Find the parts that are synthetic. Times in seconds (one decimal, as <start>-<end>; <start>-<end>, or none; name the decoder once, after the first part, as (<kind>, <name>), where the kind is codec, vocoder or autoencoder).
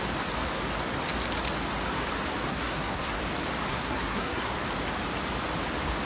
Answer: 2.5-3.2 (codec, SNAC); 3.7-4.5